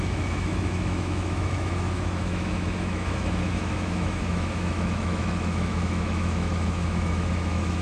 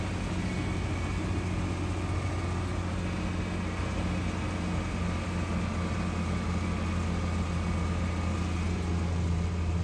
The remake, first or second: first